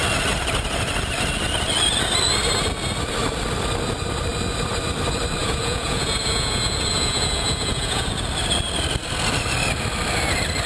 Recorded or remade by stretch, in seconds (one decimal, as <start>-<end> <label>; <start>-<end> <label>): 0.0-5.4 recorded; 5.4-8.1 remade; 8.1-10.7 recorded